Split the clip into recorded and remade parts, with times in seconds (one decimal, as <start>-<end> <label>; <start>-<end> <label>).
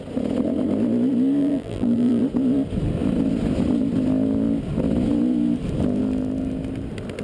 0.0-1.4 recorded; 1.4-2.2 remade; 2.2-7.2 recorded